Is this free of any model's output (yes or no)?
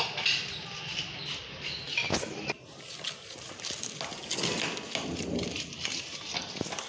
yes